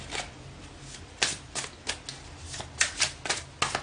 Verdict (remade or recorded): recorded